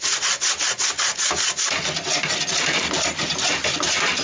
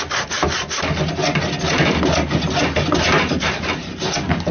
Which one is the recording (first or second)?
second